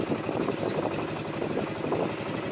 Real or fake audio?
real